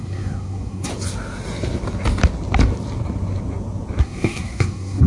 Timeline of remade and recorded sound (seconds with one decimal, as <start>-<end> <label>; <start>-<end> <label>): 0.0-0.9 remade; 0.9-4.0 recorded; 4.0-5.1 remade